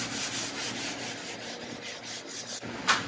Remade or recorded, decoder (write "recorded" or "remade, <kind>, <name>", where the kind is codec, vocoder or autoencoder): recorded